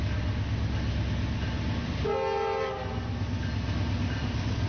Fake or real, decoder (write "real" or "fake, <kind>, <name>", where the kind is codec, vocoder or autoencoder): real